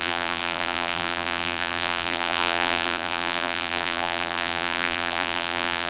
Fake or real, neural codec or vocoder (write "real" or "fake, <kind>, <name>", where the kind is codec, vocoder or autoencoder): fake, vocoder, BigVGAN v2